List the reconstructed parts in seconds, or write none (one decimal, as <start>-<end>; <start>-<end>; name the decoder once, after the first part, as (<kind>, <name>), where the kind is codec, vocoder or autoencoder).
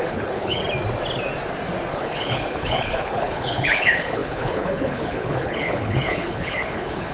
0.0-0.6 (codec, HILCodec); 1.9-7.1